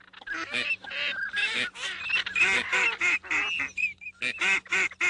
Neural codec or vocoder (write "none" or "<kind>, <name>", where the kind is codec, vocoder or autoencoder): none